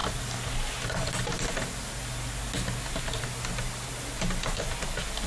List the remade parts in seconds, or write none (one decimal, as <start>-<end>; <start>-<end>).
none